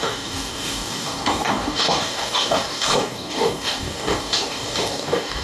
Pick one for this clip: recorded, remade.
remade